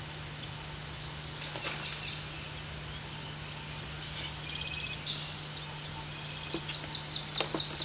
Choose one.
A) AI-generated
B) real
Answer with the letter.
B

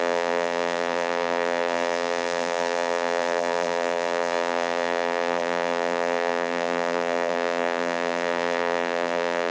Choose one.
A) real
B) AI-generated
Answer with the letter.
B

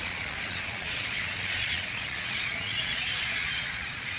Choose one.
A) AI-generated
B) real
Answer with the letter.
A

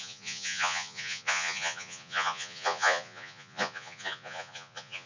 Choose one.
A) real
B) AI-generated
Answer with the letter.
B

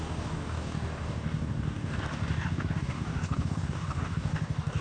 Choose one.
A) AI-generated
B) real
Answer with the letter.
A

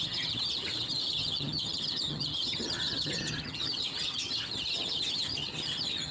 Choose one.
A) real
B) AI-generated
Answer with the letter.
B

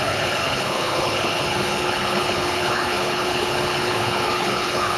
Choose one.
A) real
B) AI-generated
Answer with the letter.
B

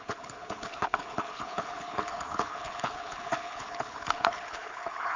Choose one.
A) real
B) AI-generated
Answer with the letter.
B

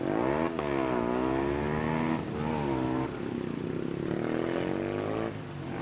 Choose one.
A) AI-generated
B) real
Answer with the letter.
B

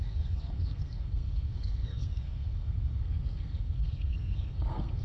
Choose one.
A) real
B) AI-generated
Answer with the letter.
B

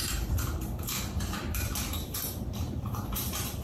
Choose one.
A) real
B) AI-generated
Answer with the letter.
B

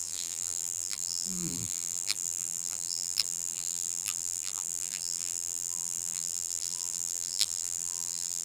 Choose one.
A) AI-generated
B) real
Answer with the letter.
A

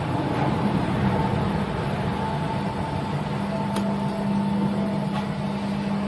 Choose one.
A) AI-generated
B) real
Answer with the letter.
B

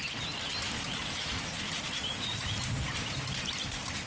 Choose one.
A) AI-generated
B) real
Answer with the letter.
B